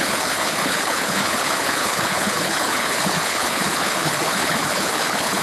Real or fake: fake